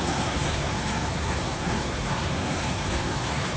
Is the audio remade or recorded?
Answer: remade